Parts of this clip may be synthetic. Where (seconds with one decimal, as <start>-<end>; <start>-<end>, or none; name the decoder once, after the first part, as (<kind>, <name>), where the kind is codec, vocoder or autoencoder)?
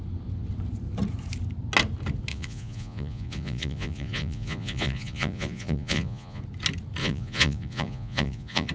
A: 2.3-6.4 (vocoder, Vocos); 7.0-8.7